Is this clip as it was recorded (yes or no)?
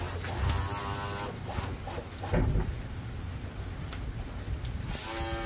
yes